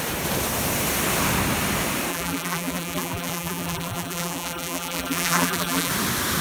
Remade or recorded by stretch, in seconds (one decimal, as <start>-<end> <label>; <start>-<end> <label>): 0.0-2.1 recorded; 2.1-5.9 remade; 5.9-6.4 recorded